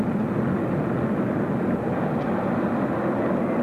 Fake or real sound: real